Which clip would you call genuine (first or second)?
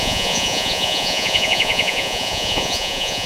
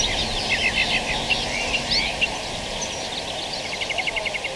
second